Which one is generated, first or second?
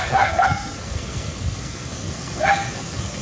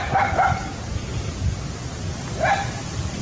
first